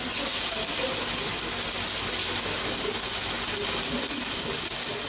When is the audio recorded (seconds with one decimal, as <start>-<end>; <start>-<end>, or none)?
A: 0.0-5.1

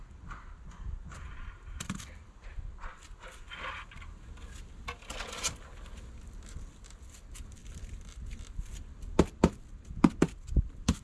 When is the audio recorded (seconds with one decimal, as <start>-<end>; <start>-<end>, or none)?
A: 2.5-6.5